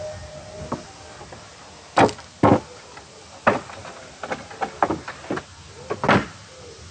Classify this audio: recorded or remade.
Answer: recorded